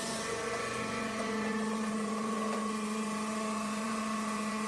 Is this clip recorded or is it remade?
remade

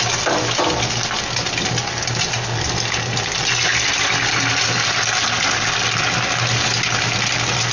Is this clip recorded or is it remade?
recorded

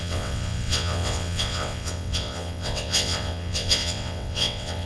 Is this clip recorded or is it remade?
remade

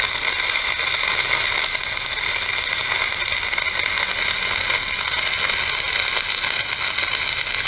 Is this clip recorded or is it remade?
recorded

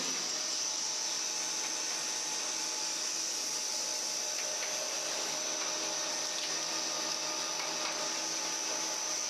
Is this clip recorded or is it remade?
recorded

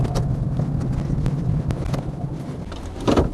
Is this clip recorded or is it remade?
recorded